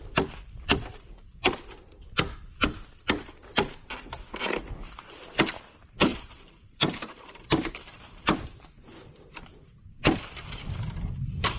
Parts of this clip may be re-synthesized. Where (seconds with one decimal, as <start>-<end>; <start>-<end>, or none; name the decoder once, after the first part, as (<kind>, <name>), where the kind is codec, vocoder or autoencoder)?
6.1-8.7 (vocoder, BigVGAN v2)